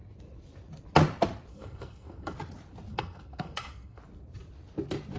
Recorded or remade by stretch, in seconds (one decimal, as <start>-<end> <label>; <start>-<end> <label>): 0.0-1.5 recorded; 1.5-2.4 remade; 2.4-2.9 recorded; 2.9-4.0 remade; 4.0-5.2 recorded